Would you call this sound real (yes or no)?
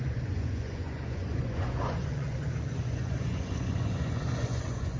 no